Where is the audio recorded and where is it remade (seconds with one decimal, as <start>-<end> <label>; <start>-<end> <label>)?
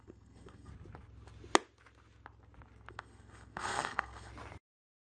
0.0-0.7 remade; 0.7-2.9 recorded; 2.9-4.3 remade; 4.3-5.1 recorded